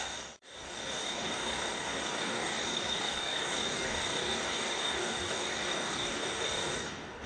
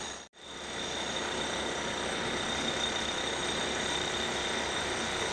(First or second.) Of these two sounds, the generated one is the first